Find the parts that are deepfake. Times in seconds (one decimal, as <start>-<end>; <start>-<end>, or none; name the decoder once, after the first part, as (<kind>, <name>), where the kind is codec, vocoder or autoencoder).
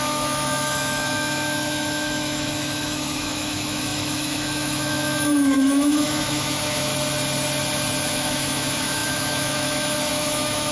0.0-6.9 (autoencoder, DAC-VAE); 8.1-10.7